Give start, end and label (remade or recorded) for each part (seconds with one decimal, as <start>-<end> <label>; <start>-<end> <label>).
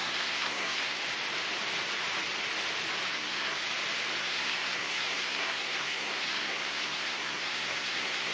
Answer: 0.0-1.0 remade; 1.0-3.1 recorded; 3.1-3.6 remade; 3.6-4.2 recorded; 4.2-8.3 remade